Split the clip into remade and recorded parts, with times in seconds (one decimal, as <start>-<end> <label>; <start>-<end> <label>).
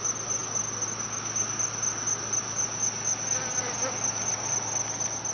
0.0-5.3 recorded